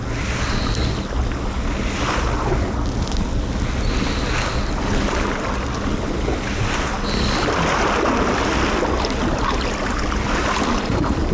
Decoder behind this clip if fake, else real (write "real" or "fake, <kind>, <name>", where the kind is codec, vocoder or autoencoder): real